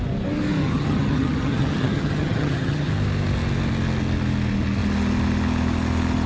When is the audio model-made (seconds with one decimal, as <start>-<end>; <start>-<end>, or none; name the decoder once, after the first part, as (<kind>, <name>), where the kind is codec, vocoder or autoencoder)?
0.6-2.9 (vocoder, HiFi-GAN)